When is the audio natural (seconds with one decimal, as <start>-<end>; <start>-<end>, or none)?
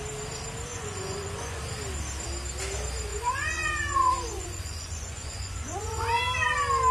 0.0-0.7; 1.6-3.1; 6.2-6.9